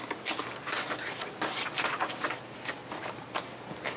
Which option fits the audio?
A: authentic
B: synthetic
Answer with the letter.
A